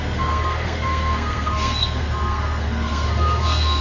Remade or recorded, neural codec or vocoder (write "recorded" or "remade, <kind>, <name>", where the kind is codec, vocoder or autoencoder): remade, codec, SNAC